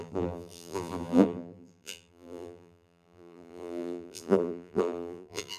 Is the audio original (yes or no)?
no